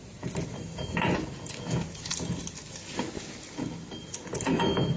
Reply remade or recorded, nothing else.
recorded